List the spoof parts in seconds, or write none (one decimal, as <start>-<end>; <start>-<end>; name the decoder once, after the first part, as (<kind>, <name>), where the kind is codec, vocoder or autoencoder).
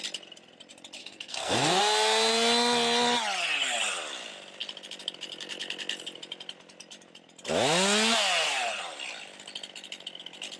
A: 1.0-1.8 (codec, SNAC)